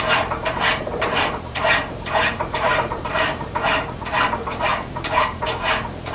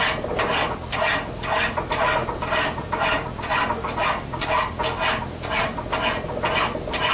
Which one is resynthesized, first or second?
first